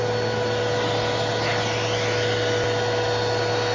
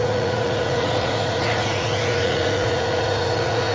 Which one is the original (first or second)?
first